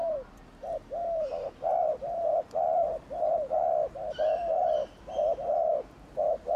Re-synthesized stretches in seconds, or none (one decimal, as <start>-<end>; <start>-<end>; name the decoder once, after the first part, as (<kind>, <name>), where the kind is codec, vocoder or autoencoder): 0.0-0.7 (vocoder, BigVGAN v2); 1.7-5.7